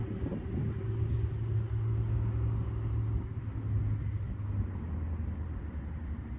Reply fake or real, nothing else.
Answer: real